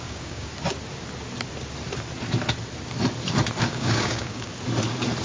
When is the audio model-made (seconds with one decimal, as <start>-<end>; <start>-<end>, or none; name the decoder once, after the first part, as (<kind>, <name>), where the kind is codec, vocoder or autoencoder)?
0.0-0.5 (codec, DAC); 3.6-4.5